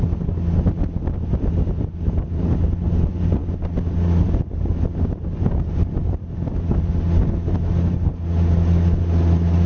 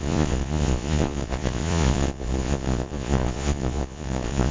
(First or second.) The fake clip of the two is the second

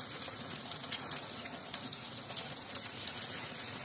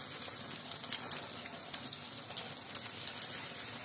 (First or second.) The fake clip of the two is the first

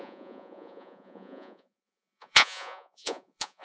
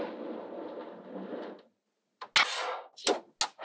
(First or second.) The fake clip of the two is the first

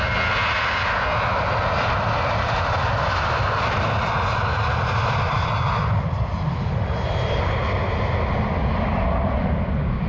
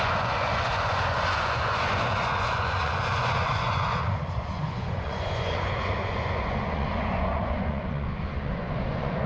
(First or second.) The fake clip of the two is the second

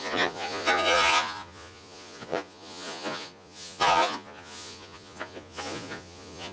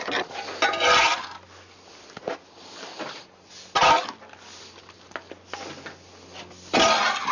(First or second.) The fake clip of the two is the first